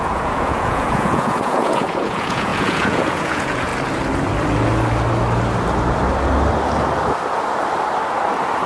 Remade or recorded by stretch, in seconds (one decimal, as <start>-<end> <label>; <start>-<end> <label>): 0.0-3.7 remade; 3.7-8.7 recorded